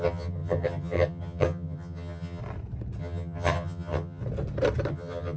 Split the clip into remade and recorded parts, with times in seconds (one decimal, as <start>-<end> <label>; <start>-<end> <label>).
0.0-2.4 remade; 2.4-3.0 recorded; 3.0-4.2 remade; 4.2-4.9 recorded; 4.9-5.4 remade

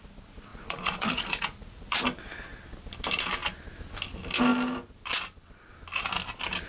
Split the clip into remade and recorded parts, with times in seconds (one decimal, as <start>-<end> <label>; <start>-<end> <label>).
0.0-0.5 recorded; 0.5-2.0 remade; 2.0-6.7 recorded

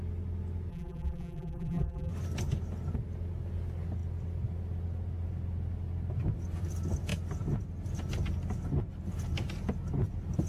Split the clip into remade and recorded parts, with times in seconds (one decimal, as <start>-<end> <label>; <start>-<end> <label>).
0.0-0.7 recorded; 0.7-2.1 remade; 2.1-10.5 recorded

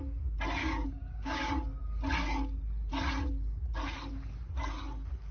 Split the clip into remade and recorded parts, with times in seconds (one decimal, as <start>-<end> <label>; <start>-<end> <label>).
0.0-0.6 recorded; 0.6-1.5 remade; 1.5-5.3 recorded

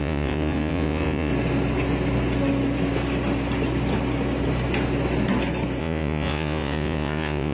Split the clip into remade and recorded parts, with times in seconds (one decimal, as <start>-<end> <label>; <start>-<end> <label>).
0.0-1.3 remade; 1.3-5.8 recorded; 5.8-7.5 remade

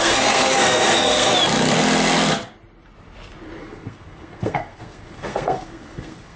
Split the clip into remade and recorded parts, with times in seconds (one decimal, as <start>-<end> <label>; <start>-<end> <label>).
0.0-1.3 remade; 1.3-3.6 recorded; 3.6-6.4 remade